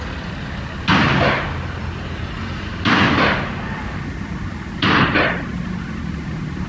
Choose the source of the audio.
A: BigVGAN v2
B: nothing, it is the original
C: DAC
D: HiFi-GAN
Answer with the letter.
B